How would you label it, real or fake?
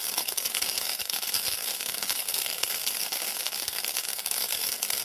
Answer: fake